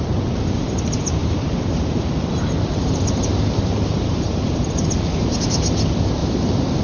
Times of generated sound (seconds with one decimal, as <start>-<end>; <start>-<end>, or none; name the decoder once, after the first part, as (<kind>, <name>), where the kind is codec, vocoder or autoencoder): 1.2-5.3 (vocoder, BigVGAN v2); 6.2-6.8